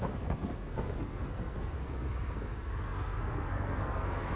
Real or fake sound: fake